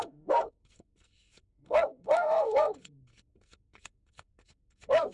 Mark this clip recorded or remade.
remade